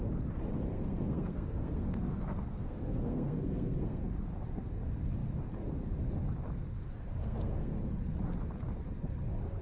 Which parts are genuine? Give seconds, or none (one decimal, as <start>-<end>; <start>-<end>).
0.0-0.7; 4.0-7.2; 7.8-9.6